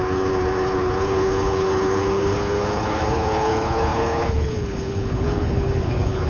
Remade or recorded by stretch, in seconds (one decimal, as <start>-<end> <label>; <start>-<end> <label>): 0.0-6.3 remade